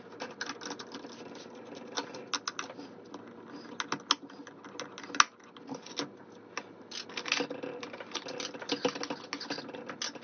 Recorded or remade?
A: recorded